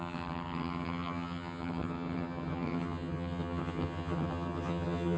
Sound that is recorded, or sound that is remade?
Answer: remade